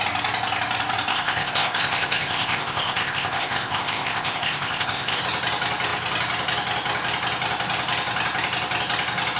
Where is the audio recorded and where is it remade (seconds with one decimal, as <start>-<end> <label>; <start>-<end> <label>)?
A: 0.0-1.1 recorded; 1.1-5.2 remade; 5.2-9.4 recorded